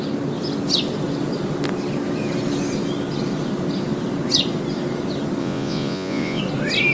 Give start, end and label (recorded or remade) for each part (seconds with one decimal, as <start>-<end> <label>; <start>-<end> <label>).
0.0-5.4 recorded; 5.4-6.4 remade; 6.4-6.9 recorded